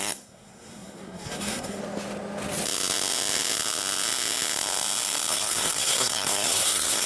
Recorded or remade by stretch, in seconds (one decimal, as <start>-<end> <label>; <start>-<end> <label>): 0.0-1.8 remade; 1.8-5.3 recorded; 5.3-7.1 remade